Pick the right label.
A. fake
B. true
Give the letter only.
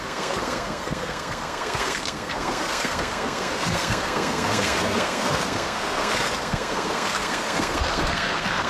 A